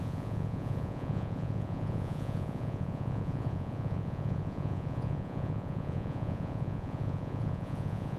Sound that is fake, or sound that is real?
fake